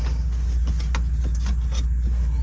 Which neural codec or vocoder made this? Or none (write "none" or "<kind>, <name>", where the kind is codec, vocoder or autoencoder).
none